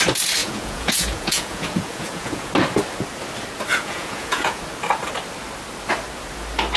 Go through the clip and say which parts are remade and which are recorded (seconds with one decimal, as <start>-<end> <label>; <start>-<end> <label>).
0.0-0.4 recorded; 0.4-2.5 remade; 2.5-3.7 recorded; 3.7-4.6 remade; 4.6-6.8 recorded